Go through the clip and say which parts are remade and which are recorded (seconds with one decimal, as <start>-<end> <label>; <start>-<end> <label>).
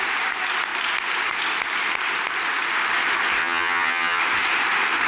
0.0-3.4 recorded; 3.4-4.2 remade; 4.2-5.1 recorded